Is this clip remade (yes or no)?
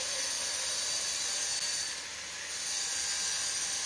no